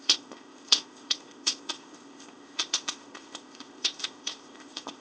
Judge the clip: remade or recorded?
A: remade